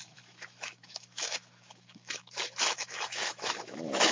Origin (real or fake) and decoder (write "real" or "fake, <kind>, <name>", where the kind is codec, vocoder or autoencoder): fake, autoencoder, DAC-VAE